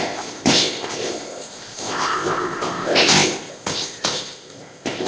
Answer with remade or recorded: remade